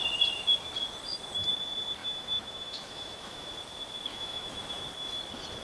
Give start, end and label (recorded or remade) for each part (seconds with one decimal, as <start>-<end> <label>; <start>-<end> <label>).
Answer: 0.0-2.0 recorded; 2.0-3.5 remade; 3.5-4.1 recorded; 4.1-4.8 remade; 4.8-5.6 recorded